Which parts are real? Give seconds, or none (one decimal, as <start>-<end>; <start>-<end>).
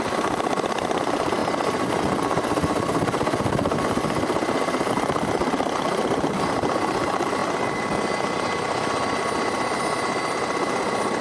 1.4-4.9; 7.4-11.2